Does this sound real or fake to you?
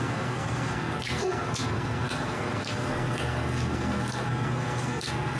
fake